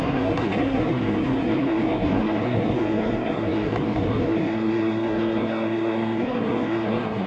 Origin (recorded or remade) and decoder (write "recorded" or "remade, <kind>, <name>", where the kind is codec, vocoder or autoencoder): remade, codec, SNAC